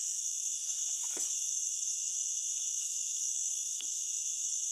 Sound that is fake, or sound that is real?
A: fake